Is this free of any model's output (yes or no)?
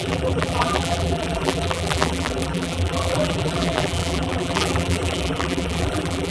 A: no